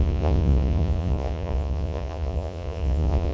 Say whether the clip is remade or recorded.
remade